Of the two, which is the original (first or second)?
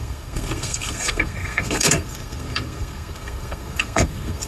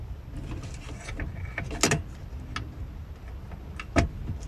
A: second